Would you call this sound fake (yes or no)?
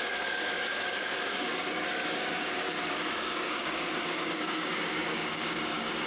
yes